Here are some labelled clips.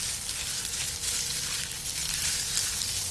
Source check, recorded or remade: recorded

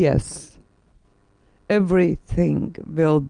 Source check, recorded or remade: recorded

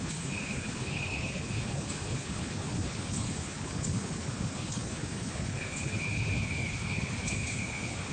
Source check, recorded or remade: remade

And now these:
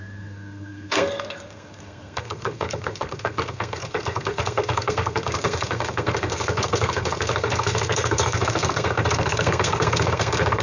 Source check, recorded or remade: remade